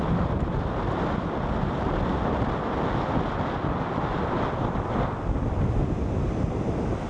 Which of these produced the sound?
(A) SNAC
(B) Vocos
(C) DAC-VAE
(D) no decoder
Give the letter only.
D